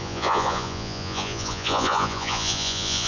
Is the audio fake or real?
fake